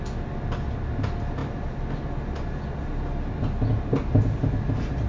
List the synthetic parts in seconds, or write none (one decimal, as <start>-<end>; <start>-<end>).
none